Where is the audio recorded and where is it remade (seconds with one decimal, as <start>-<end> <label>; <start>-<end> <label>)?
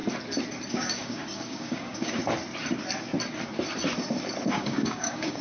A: 0.0-0.7 recorded; 0.7-2.2 remade; 2.2-4.5 recorded; 4.5-5.4 remade